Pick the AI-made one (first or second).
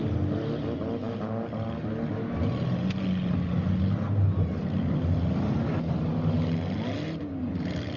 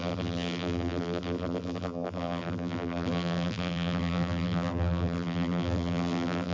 second